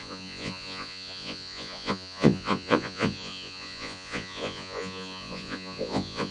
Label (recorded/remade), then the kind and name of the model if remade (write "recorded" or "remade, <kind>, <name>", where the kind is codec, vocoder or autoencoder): remade, vocoder, Vocos